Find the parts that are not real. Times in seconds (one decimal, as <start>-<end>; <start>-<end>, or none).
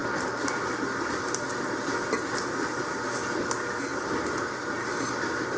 none